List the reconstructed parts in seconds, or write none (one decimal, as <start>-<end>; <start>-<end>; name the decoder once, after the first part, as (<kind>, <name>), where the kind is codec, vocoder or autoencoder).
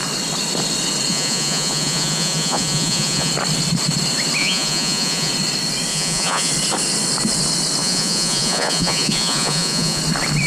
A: 1.1-3.3 (vocoder, Vocos); 4.4-5.3; 5.9-6.5; 7.8-10.0